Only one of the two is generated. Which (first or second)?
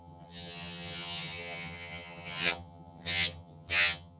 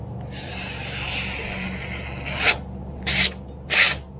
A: first